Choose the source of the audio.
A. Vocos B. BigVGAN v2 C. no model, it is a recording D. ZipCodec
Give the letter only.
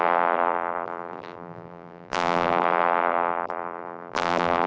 B